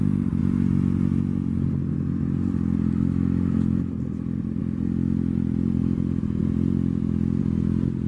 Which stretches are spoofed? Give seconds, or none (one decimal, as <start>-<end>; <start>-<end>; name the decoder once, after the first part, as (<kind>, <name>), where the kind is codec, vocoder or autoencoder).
none